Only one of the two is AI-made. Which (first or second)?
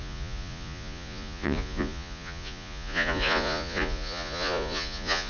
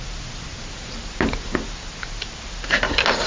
first